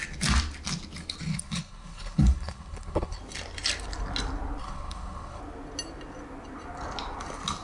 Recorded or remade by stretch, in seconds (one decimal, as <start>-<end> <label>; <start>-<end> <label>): 0.0-1.3 recorded; 1.3-3.2 remade; 3.2-4.6 recorded; 4.6-5.4 remade; 5.4-7.6 recorded